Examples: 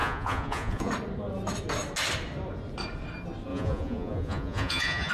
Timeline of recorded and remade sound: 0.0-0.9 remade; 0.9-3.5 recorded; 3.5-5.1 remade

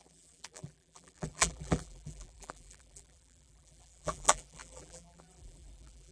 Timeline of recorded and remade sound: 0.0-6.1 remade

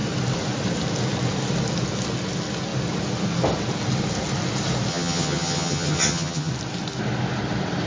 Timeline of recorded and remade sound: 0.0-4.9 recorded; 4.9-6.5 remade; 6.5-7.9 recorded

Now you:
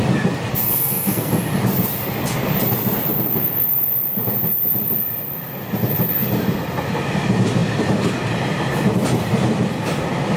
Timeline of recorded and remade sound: 0.0-0.5 recorded; 0.5-1.3 remade; 1.3-10.4 recorded